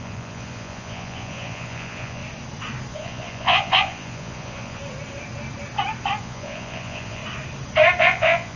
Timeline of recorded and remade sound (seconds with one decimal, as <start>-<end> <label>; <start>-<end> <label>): 0.0-2.2 remade; 2.2-2.9 recorded; 2.9-4.8 remade; 4.8-6.2 recorded; 6.2-7.2 remade; 7.2-8.0 recorded; 8.0-8.6 remade